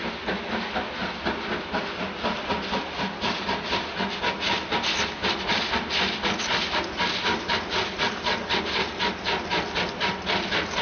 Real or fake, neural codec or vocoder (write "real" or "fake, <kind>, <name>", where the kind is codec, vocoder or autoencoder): real